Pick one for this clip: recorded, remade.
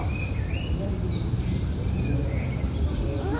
recorded